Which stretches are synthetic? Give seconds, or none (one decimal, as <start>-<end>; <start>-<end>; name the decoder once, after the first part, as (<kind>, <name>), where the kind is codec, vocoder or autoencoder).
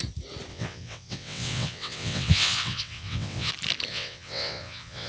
0.5-3.5 (vocoder, WaveNeXt); 3.9-5.1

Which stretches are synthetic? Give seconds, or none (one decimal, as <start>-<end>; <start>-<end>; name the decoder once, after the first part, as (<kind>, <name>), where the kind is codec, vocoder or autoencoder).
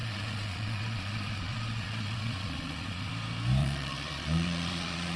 0.0-3.1 (vocoder, Vocos); 3.6-5.2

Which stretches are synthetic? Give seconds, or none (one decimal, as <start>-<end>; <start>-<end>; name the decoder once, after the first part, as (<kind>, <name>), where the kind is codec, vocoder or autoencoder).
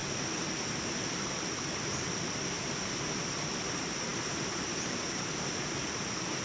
4.1-5.3 (vocoder, BigVGAN v2)